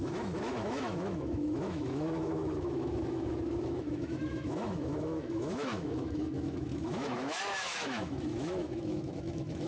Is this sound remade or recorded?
remade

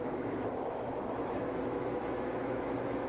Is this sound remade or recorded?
remade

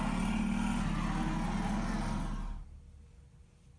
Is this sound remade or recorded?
recorded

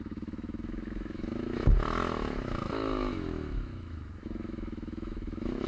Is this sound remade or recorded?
remade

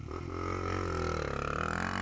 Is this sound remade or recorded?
recorded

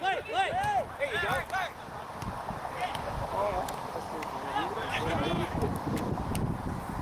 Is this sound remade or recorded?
recorded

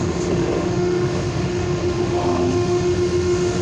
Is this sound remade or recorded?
remade